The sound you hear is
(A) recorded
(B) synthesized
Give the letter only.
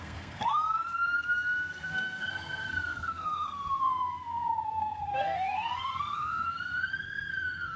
B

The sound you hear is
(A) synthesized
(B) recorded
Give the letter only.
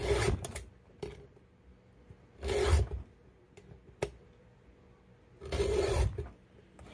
B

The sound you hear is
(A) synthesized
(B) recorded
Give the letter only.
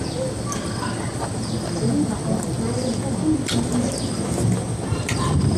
B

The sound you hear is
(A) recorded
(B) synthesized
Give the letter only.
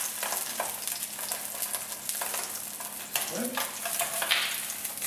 A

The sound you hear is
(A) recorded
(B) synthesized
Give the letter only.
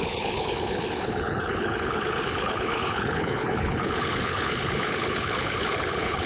B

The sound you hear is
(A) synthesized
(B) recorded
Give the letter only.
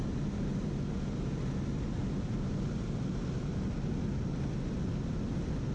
B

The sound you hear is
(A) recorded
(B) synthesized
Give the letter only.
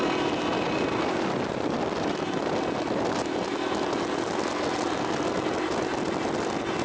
A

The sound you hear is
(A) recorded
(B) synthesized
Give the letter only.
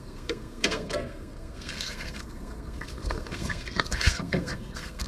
B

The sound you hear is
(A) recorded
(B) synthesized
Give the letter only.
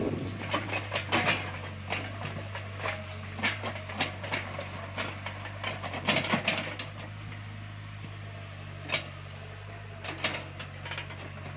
A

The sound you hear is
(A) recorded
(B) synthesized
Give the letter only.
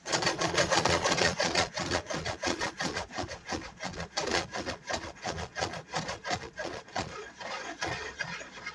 B